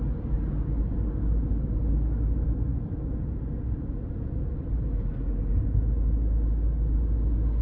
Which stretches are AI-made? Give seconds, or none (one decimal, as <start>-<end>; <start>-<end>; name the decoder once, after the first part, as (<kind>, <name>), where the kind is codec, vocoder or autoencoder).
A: none